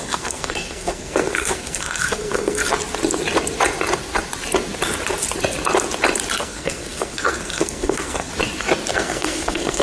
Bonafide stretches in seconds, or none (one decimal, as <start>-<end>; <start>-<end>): 2.6-6.4; 8.3-8.9